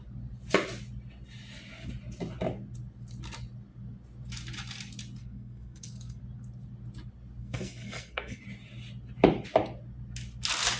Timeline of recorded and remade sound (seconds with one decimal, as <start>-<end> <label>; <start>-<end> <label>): 0.0-5.2 recorded; 5.2-6.2 remade; 6.2-7.4 recorded; 7.4-8.4 remade; 8.4-10.8 recorded